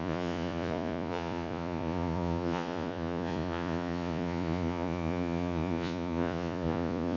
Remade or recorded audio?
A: remade